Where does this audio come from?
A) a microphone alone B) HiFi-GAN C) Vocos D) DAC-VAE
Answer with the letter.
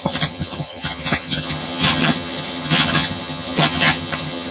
B